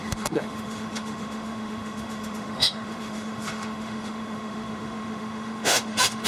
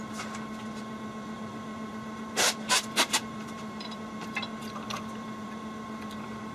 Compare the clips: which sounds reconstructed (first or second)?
first